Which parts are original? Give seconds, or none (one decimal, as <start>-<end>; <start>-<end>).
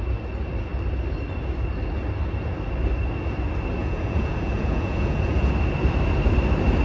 0.0-3.8; 5.5-6.8